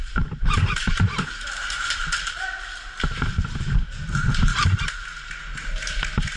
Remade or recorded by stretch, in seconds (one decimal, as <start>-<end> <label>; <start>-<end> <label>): 0.0-3.8 remade; 3.8-6.4 recorded